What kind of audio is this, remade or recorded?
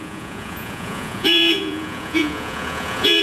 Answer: remade